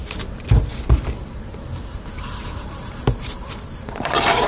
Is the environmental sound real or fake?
real